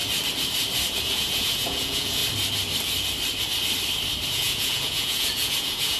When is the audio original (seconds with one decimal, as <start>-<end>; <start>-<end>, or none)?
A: 0.0-1.0; 2.2-4.3